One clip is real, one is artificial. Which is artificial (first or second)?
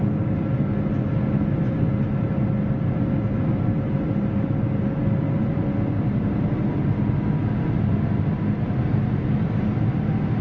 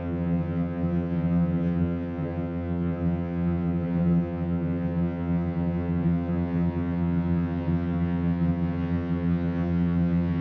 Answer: second